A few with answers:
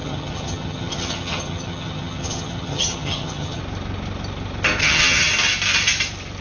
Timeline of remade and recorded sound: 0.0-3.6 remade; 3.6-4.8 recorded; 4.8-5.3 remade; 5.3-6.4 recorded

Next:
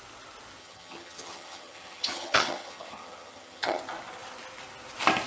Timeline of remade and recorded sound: 0.0-0.6 recorded; 0.6-3.8 remade; 3.8-5.3 recorded

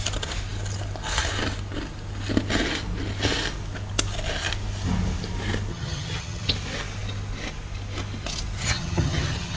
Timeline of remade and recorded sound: 0.0-5.7 recorded; 5.7-6.5 remade; 6.5-8.6 recorded; 8.6-9.6 remade

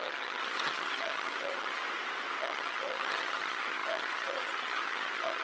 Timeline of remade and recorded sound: 0.0-1.8 remade; 1.8-2.4 recorded; 2.4-5.4 remade

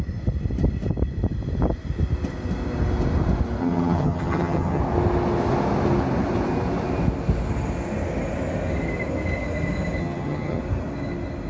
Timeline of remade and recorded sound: 0.0-3.6 recorded; 3.6-4.8 remade; 4.8-10.0 recorded; 10.0-10.6 remade; 10.6-11.5 recorded

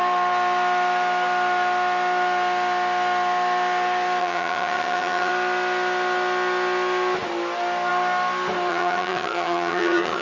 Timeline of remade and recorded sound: 0.0-4.2 recorded; 4.2-5.3 remade; 5.3-8.7 recorded; 8.7-10.2 remade